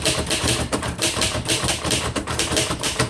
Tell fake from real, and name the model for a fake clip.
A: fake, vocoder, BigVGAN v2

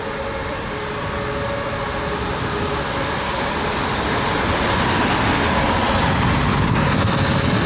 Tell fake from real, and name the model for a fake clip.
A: real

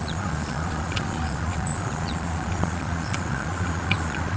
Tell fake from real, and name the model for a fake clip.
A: fake, vocoder, Vocos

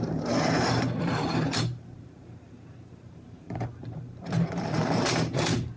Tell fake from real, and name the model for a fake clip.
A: fake, vocoder, BigVGAN v2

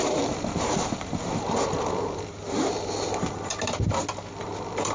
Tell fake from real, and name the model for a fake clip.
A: real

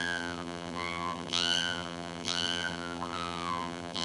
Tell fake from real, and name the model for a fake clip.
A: fake, vocoder, BigVGAN v2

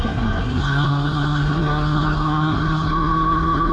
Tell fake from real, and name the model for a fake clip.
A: fake, codec, SNAC